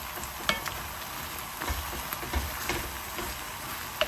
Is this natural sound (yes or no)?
yes